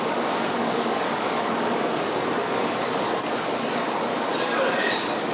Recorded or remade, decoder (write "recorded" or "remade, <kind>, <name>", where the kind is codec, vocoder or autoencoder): remade, codec, DAC